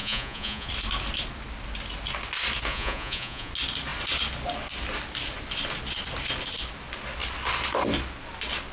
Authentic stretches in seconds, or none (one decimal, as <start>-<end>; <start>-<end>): 0.7-2.7; 3.5-8.7